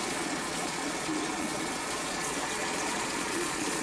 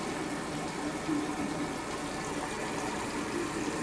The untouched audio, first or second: second